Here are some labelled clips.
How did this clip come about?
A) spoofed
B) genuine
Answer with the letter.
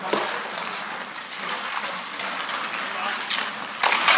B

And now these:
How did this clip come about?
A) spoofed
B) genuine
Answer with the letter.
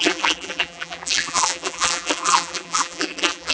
A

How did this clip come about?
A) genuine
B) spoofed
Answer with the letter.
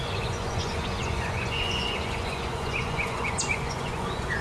B